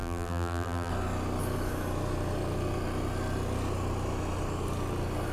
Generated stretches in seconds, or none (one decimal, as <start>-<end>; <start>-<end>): 0.0-0.9